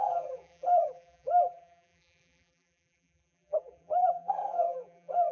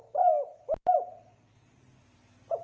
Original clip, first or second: second